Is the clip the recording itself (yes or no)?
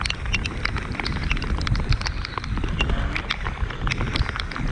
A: yes